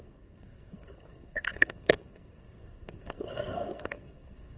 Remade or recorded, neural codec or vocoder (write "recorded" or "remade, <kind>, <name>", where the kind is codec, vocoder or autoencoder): remade, codec, SNAC